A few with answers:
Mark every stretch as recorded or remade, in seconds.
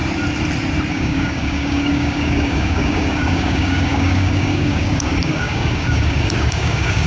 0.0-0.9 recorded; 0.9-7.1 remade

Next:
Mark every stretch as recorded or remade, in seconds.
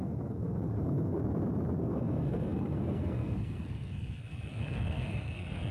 0.0-1.2 remade; 1.2-1.8 recorded; 1.8-5.7 remade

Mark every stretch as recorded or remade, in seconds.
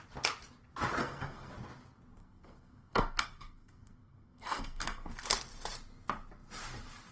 0.0-1.0 recorded; 1.0-1.5 remade; 1.5-2.2 recorded; 2.2-5.1 remade; 5.1-7.1 recorded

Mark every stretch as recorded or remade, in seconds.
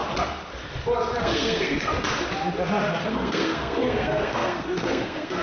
0.0-1.2 recorded; 1.2-1.9 remade; 1.9-2.9 recorded; 2.9-5.4 remade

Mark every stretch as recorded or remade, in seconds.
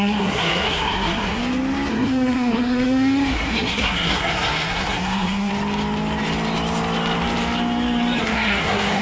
0.0-1.4 remade; 1.4-1.9 recorded; 1.9-5.5 remade; 5.5-8.2 recorded; 8.2-9.0 remade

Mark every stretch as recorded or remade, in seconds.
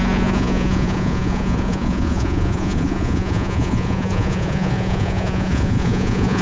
0.0-6.4 remade